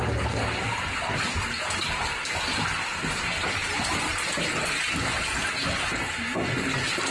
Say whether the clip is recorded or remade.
recorded